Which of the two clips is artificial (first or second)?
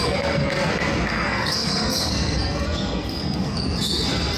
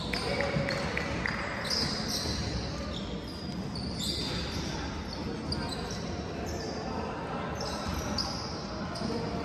first